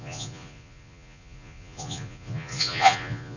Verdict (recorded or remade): remade